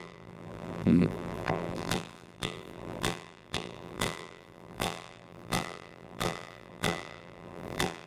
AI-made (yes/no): yes